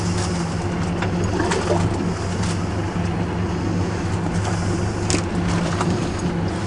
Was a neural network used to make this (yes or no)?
no